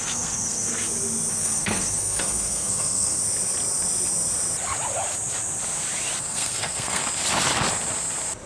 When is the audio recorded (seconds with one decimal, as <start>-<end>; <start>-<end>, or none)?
0.7-1.3; 3.2-6.2; 7.0-8.5